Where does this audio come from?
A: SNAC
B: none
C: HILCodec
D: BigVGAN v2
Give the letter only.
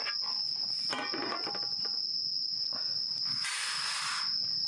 B